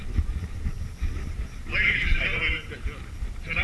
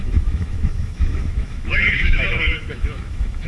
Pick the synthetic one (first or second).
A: second